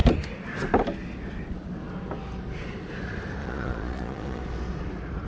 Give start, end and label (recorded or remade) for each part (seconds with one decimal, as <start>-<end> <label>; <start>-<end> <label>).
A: 0.0-3.4 recorded; 3.4-4.4 remade; 4.4-5.3 recorded

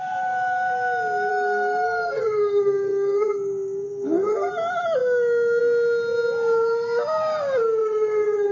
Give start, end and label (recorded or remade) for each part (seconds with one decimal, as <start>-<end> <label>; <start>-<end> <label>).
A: 0.0-1.3 recorded; 1.3-4.5 remade; 4.5-7.8 recorded; 7.8-8.5 remade

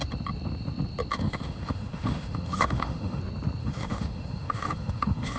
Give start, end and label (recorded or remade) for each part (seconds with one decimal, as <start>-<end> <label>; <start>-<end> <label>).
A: 0.0-1.1 recorded; 1.1-3.2 remade; 3.2-3.6 recorded; 3.6-5.4 remade

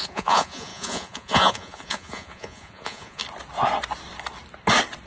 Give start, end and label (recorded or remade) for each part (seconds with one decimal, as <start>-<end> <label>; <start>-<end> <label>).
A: 0.0-3.2 remade; 3.2-5.1 recorded